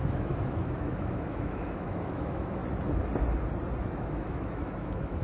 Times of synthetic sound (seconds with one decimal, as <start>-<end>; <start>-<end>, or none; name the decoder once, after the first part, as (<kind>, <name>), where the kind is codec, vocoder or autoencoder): 0.0-2.6 (autoencoder, DAC-VAE); 3.8-5.2